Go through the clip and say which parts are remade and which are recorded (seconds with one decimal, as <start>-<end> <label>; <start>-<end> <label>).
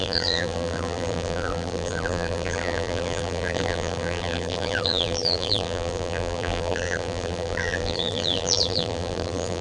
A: 0.0-9.6 remade